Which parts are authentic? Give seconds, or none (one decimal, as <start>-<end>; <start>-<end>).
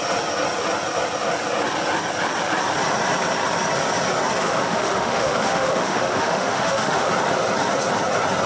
0.0-4.4; 7.1-8.5